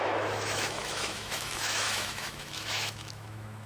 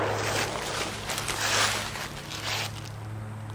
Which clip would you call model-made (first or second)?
first